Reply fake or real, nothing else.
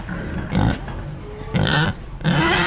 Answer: real